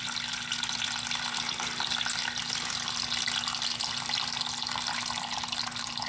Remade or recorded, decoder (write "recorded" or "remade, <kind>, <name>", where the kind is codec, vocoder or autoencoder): recorded